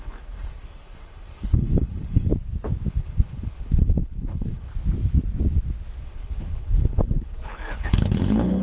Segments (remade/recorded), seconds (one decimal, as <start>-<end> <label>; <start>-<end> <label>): 0.0-2.3 remade; 2.3-2.9 recorded; 2.9-4.7 remade; 4.7-6.0 recorded; 6.0-8.6 remade